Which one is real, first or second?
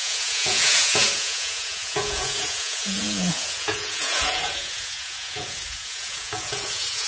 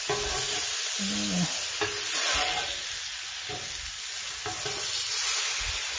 second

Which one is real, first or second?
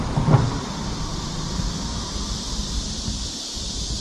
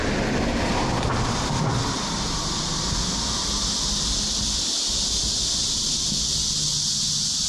second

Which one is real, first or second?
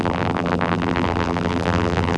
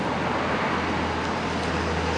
second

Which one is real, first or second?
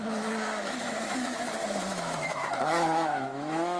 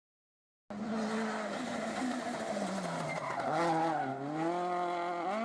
second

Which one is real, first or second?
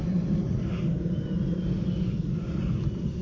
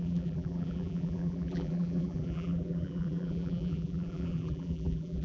first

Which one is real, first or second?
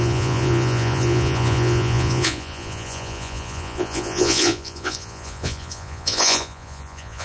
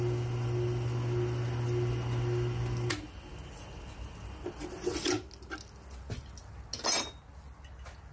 second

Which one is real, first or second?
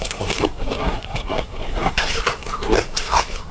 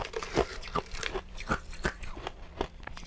second